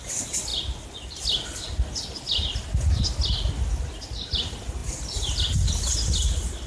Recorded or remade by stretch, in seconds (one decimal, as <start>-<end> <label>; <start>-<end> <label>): 0.0-6.7 recorded